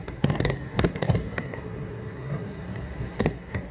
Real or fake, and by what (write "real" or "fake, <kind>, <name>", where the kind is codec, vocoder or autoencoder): fake, codec, SNAC